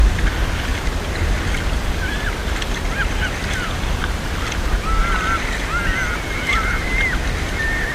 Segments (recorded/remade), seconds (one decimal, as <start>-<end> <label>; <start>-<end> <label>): 0.0-7.9 recorded